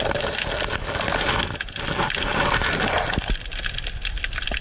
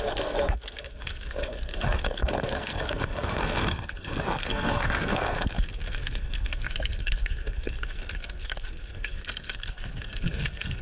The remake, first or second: second